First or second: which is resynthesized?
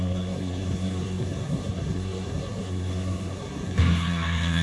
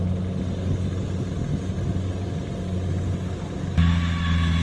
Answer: first